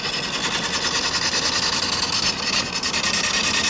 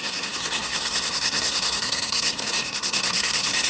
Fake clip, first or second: second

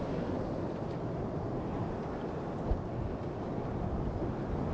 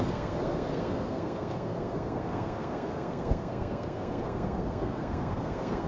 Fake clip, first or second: second